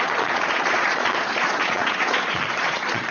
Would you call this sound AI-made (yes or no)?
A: yes